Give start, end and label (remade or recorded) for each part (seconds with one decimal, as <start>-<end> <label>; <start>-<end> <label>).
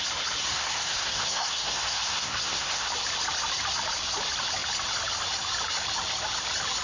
0.0-0.4 recorded; 0.4-2.9 remade; 2.9-6.8 recorded